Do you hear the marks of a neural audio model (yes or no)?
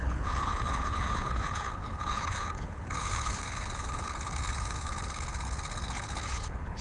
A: yes